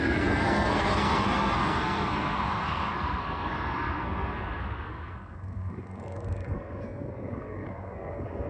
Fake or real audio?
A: fake